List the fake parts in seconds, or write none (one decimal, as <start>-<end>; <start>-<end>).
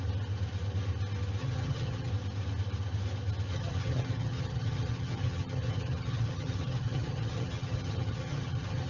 1.4-2.1; 3.5-8.9